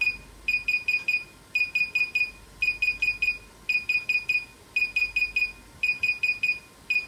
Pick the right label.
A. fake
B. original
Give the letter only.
B